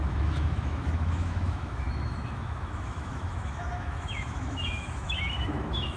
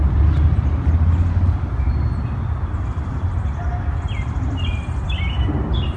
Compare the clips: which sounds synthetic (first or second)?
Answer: first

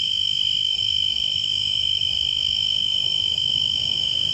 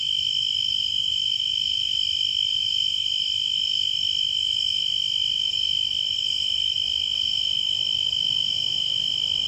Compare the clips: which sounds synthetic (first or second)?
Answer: first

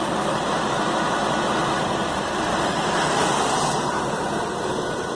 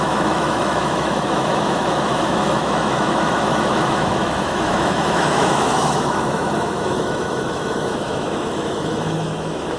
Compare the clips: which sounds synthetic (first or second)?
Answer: second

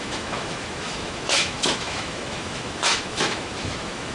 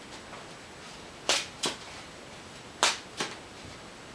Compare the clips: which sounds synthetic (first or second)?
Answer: first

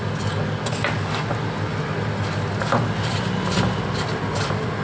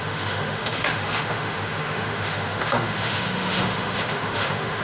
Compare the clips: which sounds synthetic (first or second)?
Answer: second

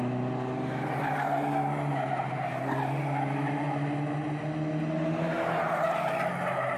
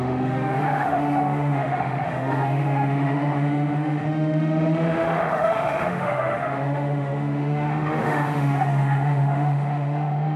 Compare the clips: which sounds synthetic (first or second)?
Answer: second